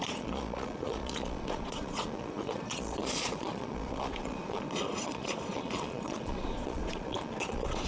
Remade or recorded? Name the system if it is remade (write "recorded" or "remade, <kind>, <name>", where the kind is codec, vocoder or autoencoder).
remade, vocoder, Vocos